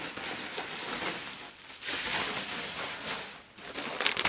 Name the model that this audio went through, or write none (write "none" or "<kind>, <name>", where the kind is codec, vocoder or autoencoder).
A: none